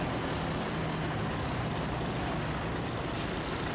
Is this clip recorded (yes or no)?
yes